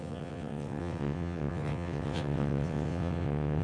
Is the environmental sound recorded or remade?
remade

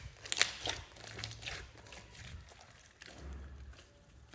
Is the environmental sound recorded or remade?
recorded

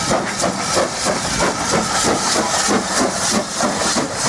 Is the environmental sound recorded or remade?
recorded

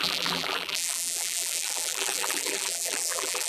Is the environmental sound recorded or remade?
remade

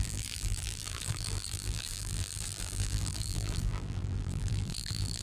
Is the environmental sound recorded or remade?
remade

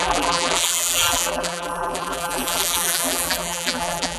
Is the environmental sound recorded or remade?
remade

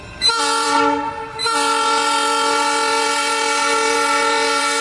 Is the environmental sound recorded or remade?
remade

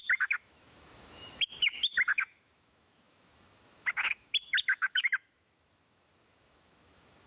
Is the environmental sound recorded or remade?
remade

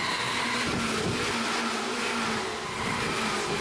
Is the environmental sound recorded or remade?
recorded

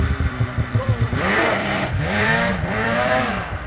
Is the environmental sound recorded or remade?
remade